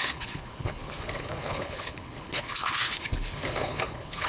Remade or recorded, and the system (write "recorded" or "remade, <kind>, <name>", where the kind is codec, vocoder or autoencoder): remade, codec, HILCodec